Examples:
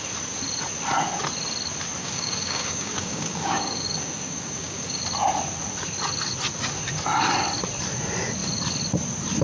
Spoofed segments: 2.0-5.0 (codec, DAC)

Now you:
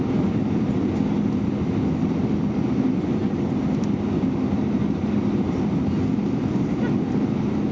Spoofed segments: none

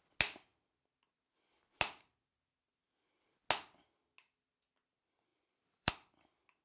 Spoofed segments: 5.3-5.9 (vocoder, BigVGAN v2)